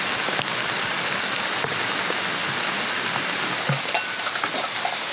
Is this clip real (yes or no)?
yes